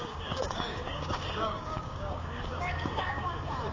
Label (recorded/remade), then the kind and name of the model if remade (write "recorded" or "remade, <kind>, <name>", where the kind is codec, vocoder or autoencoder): remade, codec, DAC